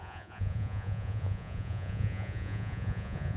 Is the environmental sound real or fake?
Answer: fake